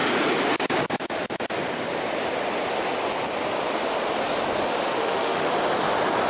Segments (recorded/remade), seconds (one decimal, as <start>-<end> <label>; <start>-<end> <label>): 0.0-5.0 recorded; 5.0-5.5 remade; 5.5-6.3 recorded